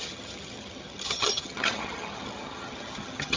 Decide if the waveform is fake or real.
fake